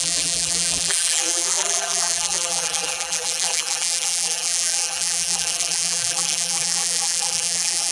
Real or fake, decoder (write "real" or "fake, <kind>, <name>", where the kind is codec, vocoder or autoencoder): fake, vocoder, BigVGAN v2